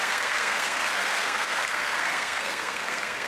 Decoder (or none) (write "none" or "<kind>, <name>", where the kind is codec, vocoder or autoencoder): codec, SNAC